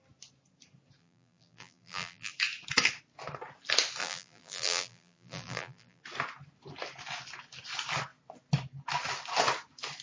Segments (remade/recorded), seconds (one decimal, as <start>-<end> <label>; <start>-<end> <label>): 0.0-1.0 recorded; 1.0-2.3 remade; 2.3-4.0 recorded; 4.0-6.0 remade; 6.0-10.0 recorded

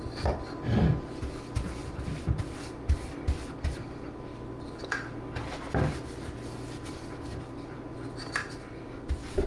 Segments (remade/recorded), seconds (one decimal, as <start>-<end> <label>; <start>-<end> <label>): 0.0-1.8 recorded; 1.8-3.1 remade; 3.1-8.4 recorded; 8.4-9.5 remade

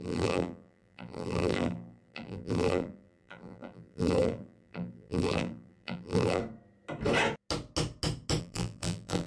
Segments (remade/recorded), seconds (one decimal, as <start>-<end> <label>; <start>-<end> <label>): 0.0-6.4 remade; 6.4-8.4 recorded; 8.4-9.3 remade

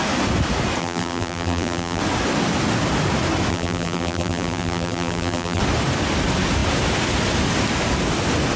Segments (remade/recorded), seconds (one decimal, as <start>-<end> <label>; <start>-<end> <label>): 0.0-0.8 recorded; 0.8-2.0 remade; 2.0-3.5 recorded; 3.5-5.6 remade; 5.6-8.6 recorded